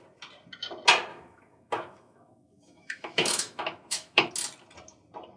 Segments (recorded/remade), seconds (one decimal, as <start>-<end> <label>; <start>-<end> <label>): 0.0-1.1 recorded; 1.1-4.3 remade; 4.3-5.4 recorded